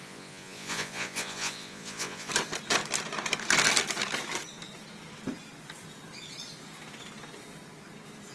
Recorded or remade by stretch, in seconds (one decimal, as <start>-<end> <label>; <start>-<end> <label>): 0.0-2.3 remade; 2.3-8.3 recorded